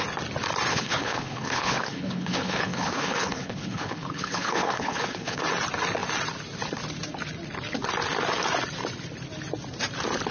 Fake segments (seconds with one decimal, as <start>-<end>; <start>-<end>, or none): 0.7-5.4